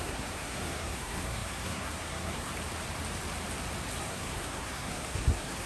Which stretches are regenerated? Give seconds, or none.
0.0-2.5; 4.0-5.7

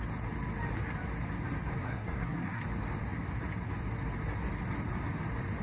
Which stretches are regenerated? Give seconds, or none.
1.8-2.6

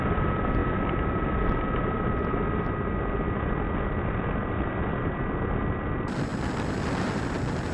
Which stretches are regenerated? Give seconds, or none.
none

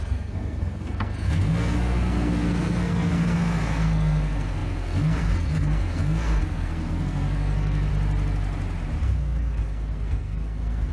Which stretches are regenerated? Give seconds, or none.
0.0-7.9; 9.0-10.9

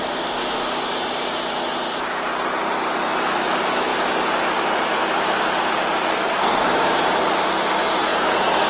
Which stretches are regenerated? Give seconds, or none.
6.1-6.7

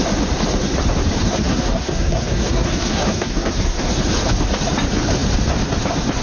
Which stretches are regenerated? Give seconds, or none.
1.2-3.9